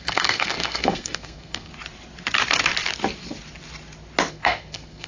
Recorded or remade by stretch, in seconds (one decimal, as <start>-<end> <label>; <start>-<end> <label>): 0.0-1.7 remade; 1.7-4.3 recorded; 4.3-5.1 remade